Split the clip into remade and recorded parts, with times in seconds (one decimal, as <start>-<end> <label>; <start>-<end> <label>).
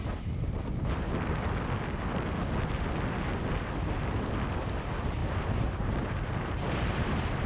0.0-5.2 recorded; 5.2-7.5 remade